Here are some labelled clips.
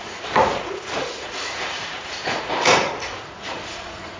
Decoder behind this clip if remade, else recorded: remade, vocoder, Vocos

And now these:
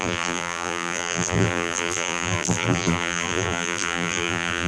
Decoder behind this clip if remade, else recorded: remade, vocoder, BigVGAN v2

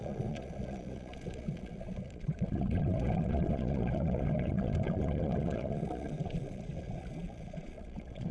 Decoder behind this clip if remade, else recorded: remade, vocoder, Vocos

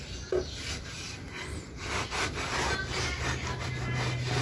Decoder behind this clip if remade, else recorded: recorded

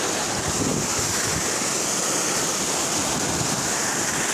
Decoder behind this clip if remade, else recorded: recorded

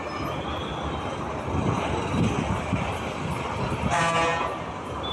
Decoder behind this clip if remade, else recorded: recorded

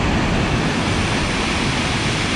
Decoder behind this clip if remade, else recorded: recorded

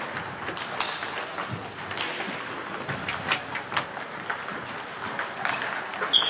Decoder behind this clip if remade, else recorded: recorded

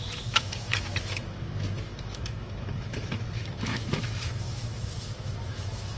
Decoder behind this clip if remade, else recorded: remade, autoencoder, DAC-VAE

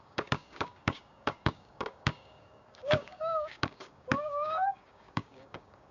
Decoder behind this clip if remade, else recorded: remade, codec, DAC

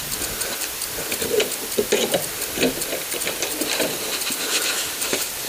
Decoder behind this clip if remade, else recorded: recorded